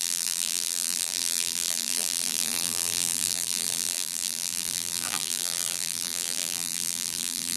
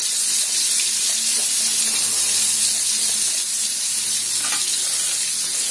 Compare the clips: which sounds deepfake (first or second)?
first